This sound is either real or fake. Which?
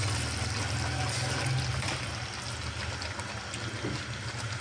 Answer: real